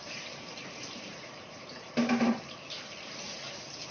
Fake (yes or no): yes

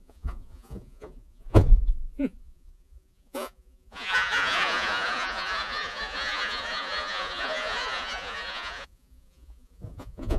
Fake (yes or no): yes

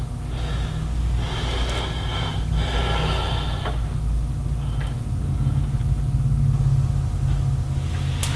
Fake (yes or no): no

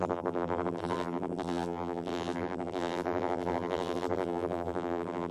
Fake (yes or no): yes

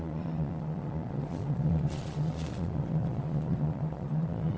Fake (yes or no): yes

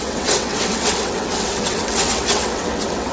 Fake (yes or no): yes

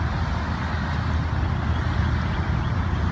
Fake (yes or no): no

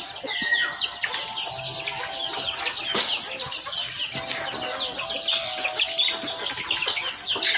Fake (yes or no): no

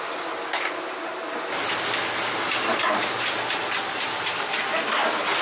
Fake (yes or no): no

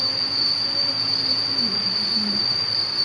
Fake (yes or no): yes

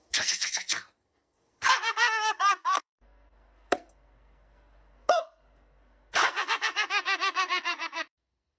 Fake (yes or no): yes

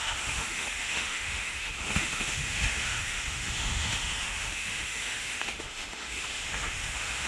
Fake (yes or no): yes